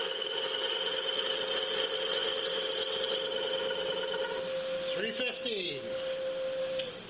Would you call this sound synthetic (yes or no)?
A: no